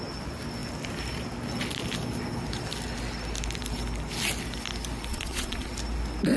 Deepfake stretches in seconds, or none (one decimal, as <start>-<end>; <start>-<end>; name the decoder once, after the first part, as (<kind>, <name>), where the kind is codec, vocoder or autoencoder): 5.1-5.7 (vocoder, Vocos)